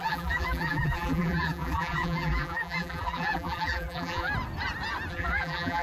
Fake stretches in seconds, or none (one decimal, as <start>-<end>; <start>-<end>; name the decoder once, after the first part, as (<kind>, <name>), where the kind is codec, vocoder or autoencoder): 0.0-4.3 (vocoder, BigVGAN v2); 5.1-5.8